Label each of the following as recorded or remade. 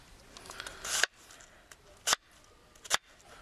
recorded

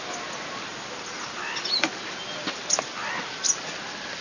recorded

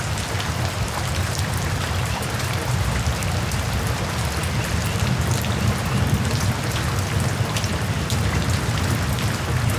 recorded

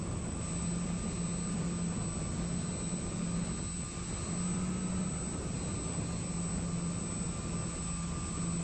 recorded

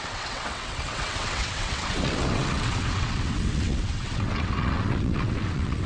remade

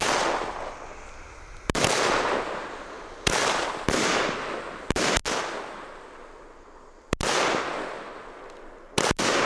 recorded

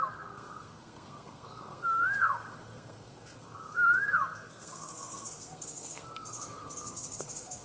remade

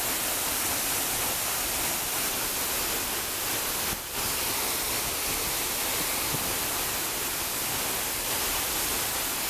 recorded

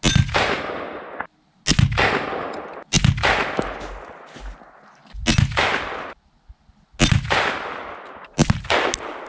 recorded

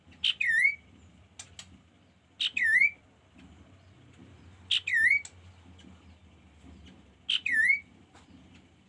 recorded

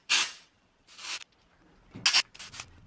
recorded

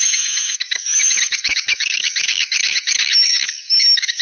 remade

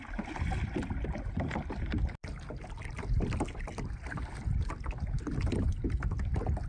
recorded